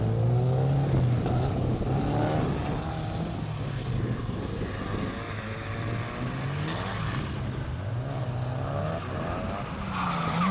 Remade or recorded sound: recorded